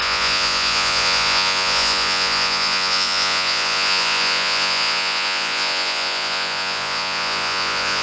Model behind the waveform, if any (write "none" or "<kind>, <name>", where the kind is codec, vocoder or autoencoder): vocoder, Vocos